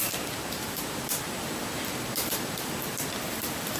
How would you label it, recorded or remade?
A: remade